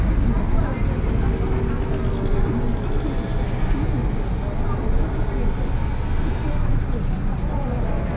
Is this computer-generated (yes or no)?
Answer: no